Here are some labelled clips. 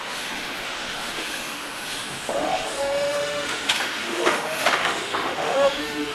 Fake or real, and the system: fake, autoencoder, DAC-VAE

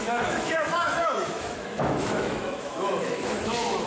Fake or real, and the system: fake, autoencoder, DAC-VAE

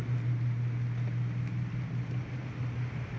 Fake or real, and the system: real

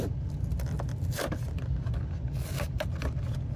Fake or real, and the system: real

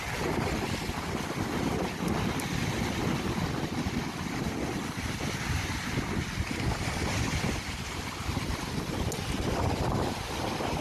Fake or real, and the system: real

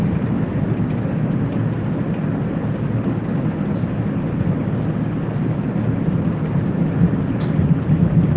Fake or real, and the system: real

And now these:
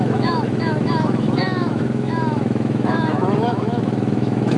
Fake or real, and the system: fake, autoencoder, DAC-VAE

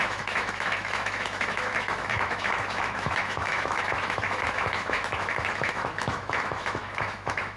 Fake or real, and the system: fake, autoencoder, DAC-VAE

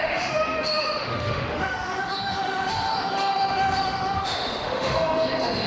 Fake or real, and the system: fake, autoencoder, DAC-VAE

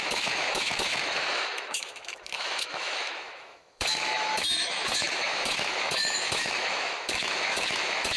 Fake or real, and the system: fake, autoencoder, DAC-VAE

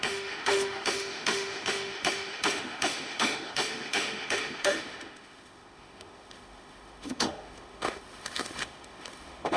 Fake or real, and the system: fake, autoencoder, DAC-VAE